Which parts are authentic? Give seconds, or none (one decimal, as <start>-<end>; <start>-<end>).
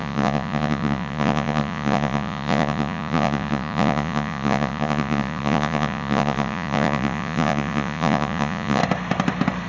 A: 8.8-9.7